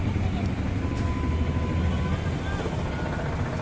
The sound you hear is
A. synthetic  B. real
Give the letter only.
B